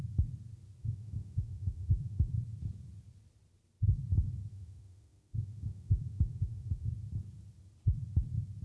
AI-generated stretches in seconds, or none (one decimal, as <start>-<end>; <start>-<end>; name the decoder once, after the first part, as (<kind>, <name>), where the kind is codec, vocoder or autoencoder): 0.8-2.3 (autoencoder, DAC-VAE); 4.5-6.9